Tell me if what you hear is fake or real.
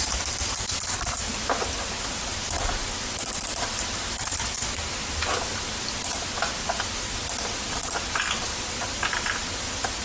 fake